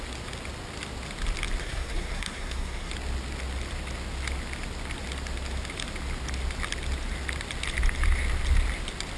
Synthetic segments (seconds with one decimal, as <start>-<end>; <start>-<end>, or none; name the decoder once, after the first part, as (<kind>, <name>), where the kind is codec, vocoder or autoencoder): 1.6-2.9 (codec, SNAC)